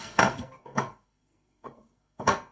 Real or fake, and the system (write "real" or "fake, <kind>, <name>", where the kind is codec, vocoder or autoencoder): fake, codec, SNAC